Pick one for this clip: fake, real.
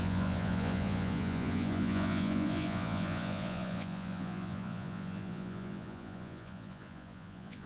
fake